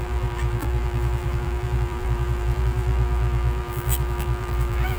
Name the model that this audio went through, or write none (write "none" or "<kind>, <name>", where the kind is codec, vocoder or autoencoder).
vocoder, BigVGAN v2